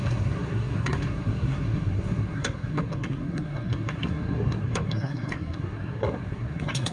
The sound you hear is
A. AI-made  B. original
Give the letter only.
A